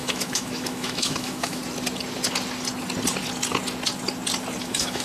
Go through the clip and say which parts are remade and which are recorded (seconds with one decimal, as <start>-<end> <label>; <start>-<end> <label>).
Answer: 0.0-1.6 remade; 1.6-4.6 recorded; 4.6-5.0 remade